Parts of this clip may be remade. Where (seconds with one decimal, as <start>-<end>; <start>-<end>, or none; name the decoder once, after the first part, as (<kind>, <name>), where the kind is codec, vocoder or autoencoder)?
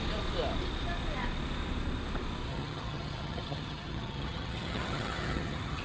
2.5-5.8 (vocoder, HiFi-GAN)